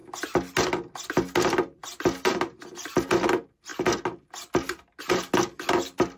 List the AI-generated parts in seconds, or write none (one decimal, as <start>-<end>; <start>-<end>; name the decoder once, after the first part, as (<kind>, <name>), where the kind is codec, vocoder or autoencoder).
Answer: none